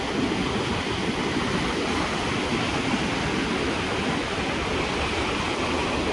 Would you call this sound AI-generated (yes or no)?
no